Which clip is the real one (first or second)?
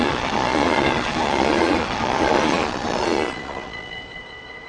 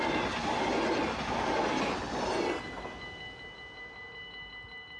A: second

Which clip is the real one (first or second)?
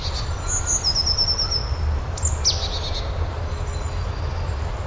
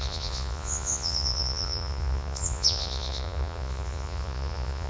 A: first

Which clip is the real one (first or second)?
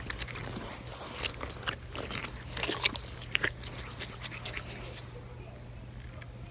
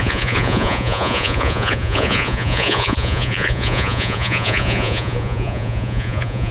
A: first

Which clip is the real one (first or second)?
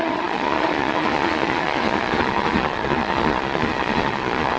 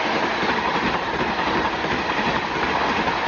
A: second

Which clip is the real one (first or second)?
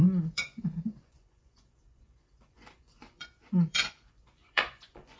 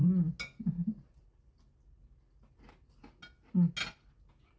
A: second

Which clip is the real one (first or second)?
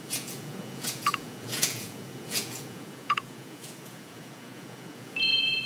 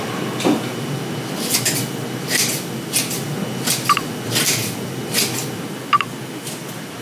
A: second